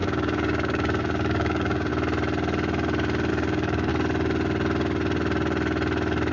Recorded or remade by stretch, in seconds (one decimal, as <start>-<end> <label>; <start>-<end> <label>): 0.0-1.9 remade; 1.9-3.3 recorded; 3.3-3.9 remade; 3.9-6.3 recorded